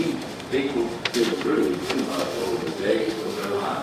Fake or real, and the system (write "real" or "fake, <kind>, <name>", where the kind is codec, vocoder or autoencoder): fake, autoencoder, DAC-VAE